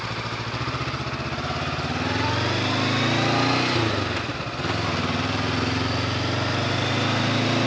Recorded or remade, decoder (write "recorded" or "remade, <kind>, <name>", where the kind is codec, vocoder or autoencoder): recorded